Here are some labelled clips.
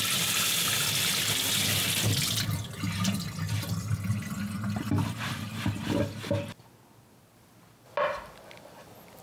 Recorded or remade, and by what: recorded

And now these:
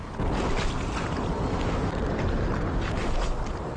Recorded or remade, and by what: recorded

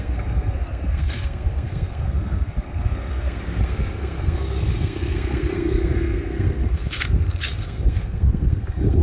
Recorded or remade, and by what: remade, codec, SNAC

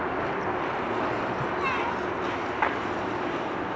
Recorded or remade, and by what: recorded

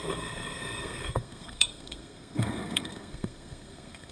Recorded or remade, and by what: remade, codec, SNAC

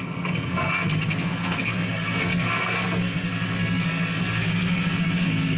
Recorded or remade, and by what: remade, codec, SNAC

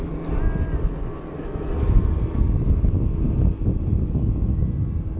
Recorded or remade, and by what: recorded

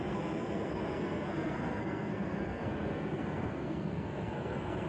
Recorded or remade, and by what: remade, codec, SNAC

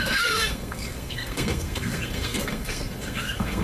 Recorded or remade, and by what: remade, codec, SNAC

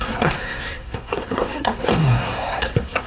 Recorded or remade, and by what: remade, codec, SNAC